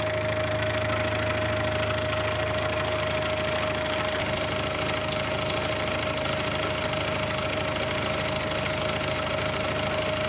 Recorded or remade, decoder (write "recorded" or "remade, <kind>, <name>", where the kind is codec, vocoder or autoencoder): recorded